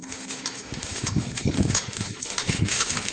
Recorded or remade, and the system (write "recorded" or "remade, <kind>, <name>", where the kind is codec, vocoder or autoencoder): remade, autoencoder, DAC-VAE